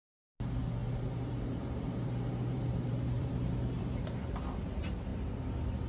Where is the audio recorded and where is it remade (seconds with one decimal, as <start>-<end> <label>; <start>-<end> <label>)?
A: 0.0-0.8 recorded; 0.8-4.3 remade; 4.3-5.9 recorded